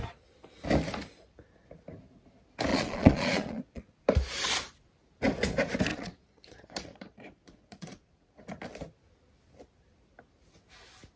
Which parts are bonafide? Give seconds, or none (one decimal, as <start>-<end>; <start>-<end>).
0.0-2.7; 4.0-5.9; 8.4-11.2

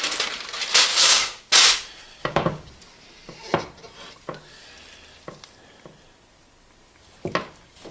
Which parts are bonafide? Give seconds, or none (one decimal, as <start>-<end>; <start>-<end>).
0.0-0.9; 1.5-2.1; 2.7-7.9

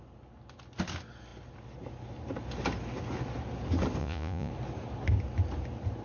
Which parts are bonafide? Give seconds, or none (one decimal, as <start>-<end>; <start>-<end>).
0.0-4.0; 4.5-6.0

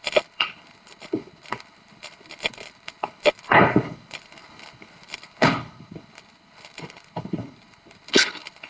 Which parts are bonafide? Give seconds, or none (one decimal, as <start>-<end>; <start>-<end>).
none

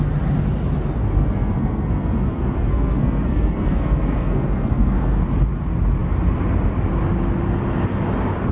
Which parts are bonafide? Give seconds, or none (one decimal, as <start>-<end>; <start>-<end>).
0.0-1.0; 5.2-8.5

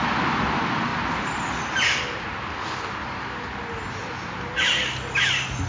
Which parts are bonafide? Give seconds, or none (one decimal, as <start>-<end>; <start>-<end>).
0.0-5.7